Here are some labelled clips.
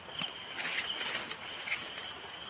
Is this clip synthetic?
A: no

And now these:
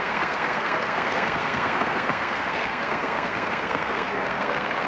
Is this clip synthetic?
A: yes